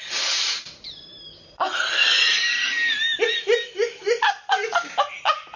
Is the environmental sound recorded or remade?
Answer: recorded